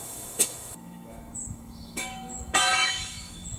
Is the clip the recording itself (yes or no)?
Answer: no